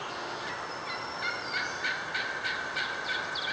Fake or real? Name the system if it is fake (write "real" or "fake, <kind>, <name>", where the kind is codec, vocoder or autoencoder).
real